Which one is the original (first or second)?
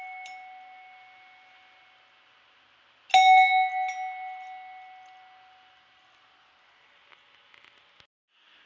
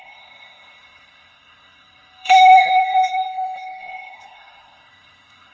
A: first